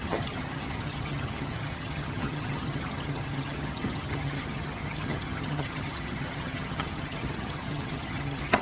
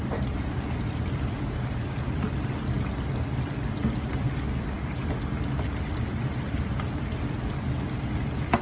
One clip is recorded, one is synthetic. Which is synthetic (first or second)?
first